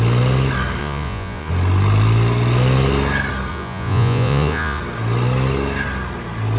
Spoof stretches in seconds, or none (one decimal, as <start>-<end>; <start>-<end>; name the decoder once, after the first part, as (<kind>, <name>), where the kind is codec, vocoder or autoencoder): 0.8-1.5 (vocoder, Vocos); 3.5-4.8